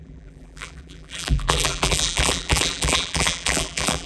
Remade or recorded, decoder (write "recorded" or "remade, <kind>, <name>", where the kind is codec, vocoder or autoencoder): remade, vocoder, BigVGAN v2